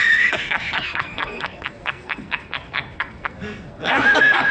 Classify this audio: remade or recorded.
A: remade